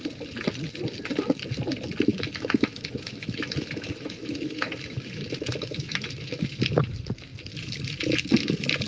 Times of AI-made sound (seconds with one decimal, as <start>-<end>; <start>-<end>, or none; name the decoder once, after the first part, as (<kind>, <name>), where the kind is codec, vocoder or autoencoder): 2.1-6.6 (autoencoder, DAC-VAE)